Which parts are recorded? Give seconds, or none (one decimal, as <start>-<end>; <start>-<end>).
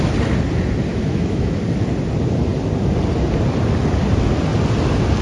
0.0-0.9; 1.6-5.2